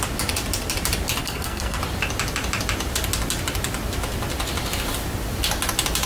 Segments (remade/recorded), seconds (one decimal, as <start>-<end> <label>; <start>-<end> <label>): 0.0-1.2 recorded; 1.2-1.8 remade; 1.8-6.1 recorded

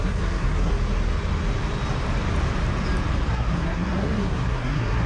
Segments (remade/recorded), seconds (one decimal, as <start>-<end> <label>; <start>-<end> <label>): 0.0-0.7 remade; 0.7-3.3 recorded; 3.3-5.1 remade

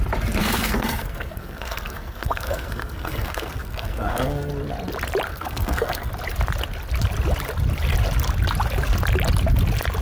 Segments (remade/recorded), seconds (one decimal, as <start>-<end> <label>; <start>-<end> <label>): 0.0-0.4 recorded; 0.4-4.5 remade; 4.5-5.3 recorded; 5.3-6.1 remade; 6.1-10.0 recorded

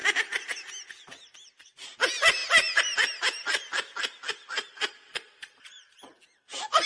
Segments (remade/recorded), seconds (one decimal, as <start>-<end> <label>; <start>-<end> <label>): 0.0-6.9 recorded

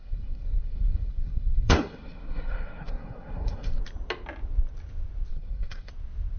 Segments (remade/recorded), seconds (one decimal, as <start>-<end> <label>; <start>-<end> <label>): 0.0-3.8 remade; 3.8-5.3 recorded; 5.3-5.9 remade; 5.9-6.4 recorded

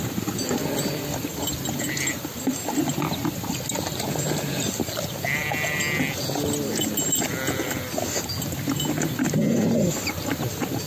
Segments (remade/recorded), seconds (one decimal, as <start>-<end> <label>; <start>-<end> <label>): 0.0-10.9 recorded

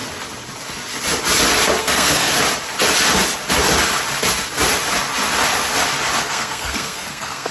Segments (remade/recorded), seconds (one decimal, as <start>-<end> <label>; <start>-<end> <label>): 0.0-1.8 recorded; 1.8-2.3 remade; 2.3-6.2 recorded; 6.2-7.5 remade

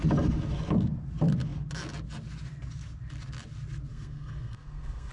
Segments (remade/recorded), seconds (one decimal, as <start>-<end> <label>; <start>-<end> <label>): 0.0-3.9 recorded; 3.9-5.1 remade